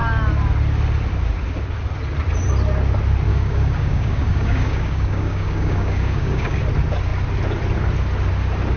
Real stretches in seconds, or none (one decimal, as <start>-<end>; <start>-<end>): 0.0-3.3; 6.6-8.8